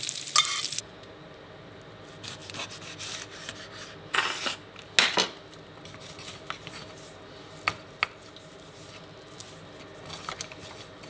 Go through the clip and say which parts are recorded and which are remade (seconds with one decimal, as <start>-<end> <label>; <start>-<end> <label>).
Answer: 0.0-11.1 recorded